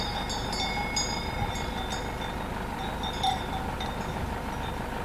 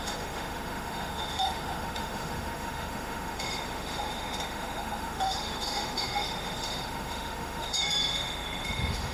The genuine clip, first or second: first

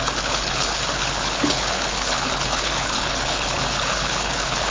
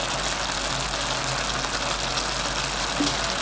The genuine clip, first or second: second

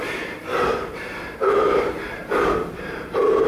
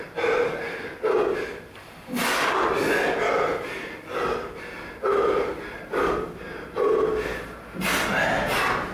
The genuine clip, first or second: second